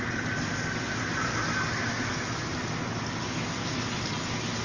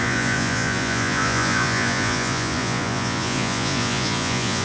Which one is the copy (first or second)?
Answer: second